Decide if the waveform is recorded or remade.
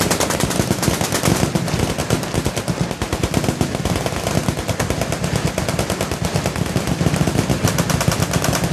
recorded